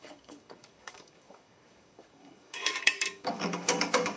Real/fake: fake